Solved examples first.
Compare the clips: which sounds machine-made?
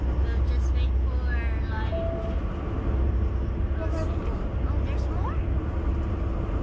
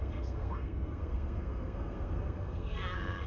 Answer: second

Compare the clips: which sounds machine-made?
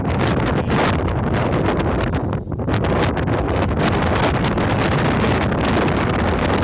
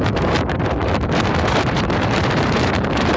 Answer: second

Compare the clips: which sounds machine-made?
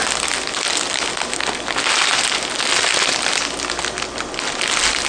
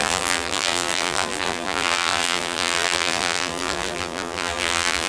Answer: second